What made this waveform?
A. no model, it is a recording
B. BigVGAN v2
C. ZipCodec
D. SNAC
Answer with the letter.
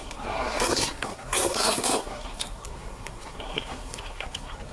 D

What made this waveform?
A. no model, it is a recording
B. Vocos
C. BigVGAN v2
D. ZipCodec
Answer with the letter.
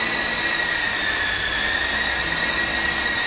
A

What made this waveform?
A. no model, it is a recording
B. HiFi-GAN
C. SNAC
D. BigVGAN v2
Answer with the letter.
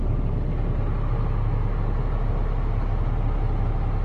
A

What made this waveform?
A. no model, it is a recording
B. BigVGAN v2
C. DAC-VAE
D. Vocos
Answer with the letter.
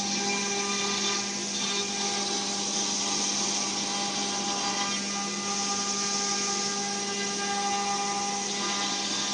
A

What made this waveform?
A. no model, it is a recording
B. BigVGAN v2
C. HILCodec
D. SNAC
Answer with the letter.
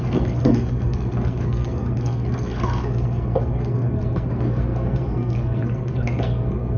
D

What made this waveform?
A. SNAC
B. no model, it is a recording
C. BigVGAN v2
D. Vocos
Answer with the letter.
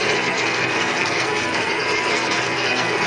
A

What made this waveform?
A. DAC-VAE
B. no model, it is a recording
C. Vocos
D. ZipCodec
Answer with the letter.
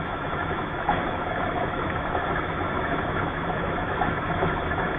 A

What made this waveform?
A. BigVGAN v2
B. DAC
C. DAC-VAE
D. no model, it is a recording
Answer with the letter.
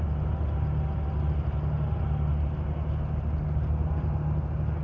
D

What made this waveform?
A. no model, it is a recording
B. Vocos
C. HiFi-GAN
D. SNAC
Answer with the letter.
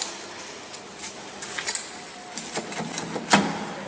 A